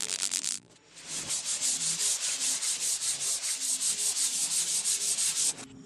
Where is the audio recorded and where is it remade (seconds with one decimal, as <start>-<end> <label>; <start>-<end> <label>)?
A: 0.0-0.7 remade; 0.7-5.9 recorded